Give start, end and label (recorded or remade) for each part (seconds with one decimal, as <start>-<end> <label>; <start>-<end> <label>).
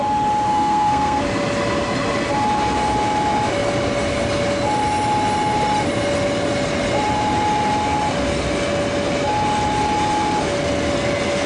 0.0-0.5 recorded; 0.5-1.2 remade; 1.2-11.5 recorded